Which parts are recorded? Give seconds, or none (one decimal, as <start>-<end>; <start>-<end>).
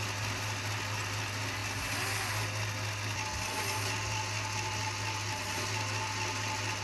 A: 0.0-6.8